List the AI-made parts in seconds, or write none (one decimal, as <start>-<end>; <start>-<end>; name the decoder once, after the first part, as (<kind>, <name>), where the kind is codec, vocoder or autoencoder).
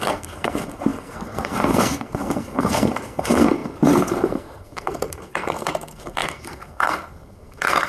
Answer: 0.0-7.9 (codec, SNAC)